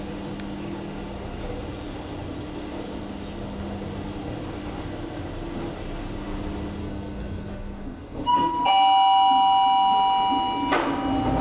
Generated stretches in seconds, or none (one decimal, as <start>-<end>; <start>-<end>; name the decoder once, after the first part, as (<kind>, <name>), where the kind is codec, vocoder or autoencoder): 6.8-8.5 (codec, SNAC)